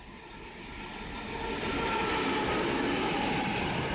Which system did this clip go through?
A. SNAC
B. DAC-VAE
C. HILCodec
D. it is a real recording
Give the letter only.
D